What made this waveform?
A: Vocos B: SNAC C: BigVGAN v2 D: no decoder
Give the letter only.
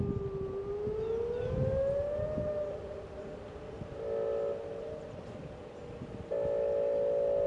D